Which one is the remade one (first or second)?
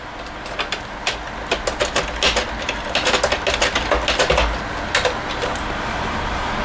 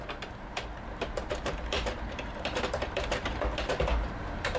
second